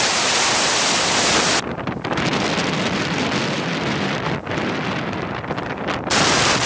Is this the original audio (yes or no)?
no